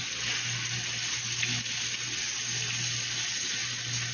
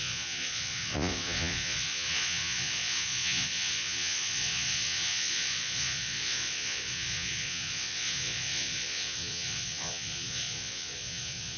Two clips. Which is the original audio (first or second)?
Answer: first